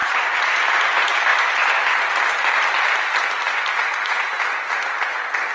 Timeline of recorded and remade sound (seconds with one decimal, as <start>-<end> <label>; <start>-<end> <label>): 0.0-0.6 remade; 0.6-3.8 recorded; 3.8-4.3 remade; 4.3-5.5 recorded